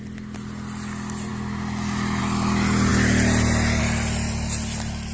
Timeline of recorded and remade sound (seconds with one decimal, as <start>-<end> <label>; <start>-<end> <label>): 0.0-5.1 recorded